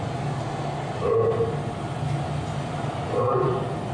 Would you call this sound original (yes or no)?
yes